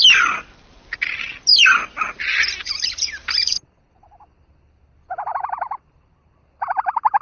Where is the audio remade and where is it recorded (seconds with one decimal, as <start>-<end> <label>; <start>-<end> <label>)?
0.0-5.0 recorded; 5.0-6.0 remade; 6.0-7.2 recorded